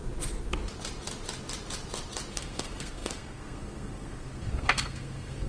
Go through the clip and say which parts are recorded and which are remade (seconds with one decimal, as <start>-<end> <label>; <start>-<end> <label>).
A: 0.0-2.3 recorded; 2.3-5.5 remade